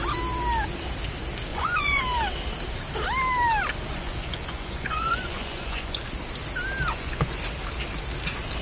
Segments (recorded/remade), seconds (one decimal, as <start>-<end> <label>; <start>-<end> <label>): 0.0-1.5 recorded; 1.5-2.0 remade; 2.0-3.9 recorded; 3.9-6.0 remade; 6.0-6.9 recorded; 6.9-7.4 remade; 7.4-8.6 recorded